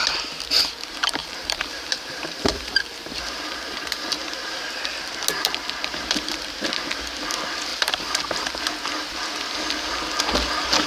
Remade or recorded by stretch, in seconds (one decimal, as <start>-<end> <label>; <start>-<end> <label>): 0.0-1.2 recorded; 1.2-4.2 remade; 4.2-7.7 recorded; 7.7-8.6 remade; 8.6-10.9 recorded